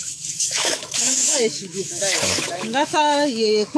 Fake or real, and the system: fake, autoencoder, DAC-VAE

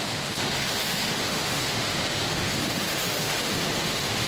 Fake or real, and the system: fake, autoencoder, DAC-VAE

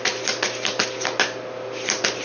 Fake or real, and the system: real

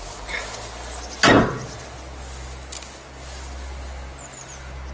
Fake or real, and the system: real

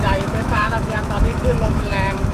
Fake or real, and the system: fake, autoencoder, DAC-VAE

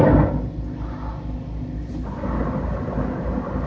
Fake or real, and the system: real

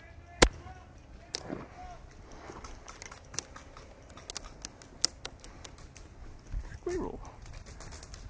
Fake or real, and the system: real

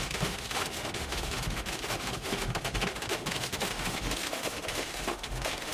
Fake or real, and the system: fake, autoencoder, DAC-VAE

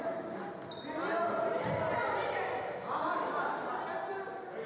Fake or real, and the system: real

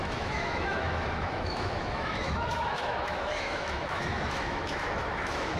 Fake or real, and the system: fake, autoencoder, DAC-VAE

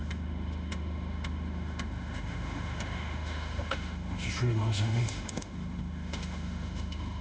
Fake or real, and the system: fake, autoencoder, DAC-VAE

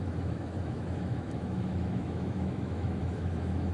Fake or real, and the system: fake, autoencoder, DAC-VAE